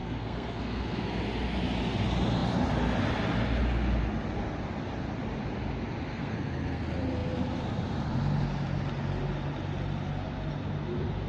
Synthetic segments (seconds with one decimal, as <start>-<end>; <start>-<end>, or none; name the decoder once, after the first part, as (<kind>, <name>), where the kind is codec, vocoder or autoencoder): 0.0-1.2 (codec, SNAC); 6.1-6.8